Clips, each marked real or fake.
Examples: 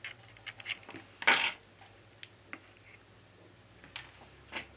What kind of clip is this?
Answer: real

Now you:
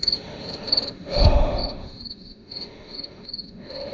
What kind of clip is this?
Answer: fake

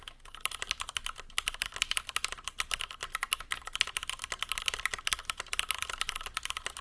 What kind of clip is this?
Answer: real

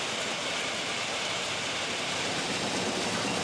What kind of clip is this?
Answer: real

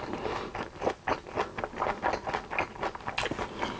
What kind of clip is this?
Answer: real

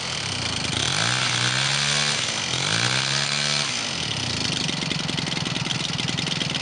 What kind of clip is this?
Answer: real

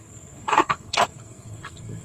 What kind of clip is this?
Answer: fake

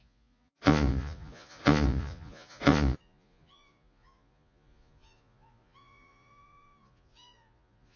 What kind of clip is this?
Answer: fake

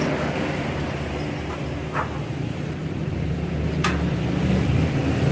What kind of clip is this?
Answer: real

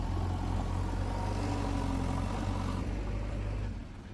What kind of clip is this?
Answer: real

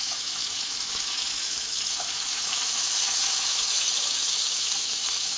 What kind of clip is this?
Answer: fake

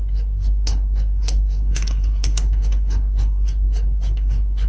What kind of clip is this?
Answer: fake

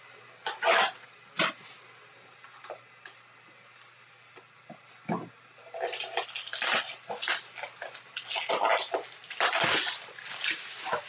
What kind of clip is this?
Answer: real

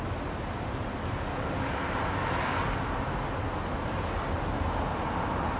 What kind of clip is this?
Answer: real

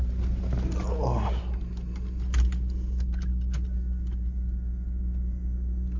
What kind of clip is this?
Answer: real